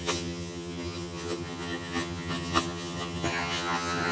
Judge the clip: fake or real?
fake